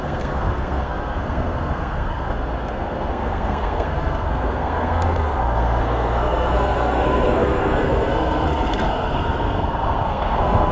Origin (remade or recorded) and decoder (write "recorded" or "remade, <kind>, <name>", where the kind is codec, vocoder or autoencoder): remade, codec, SNAC